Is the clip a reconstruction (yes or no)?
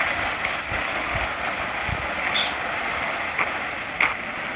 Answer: no